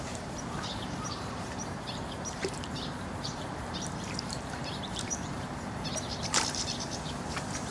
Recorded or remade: remade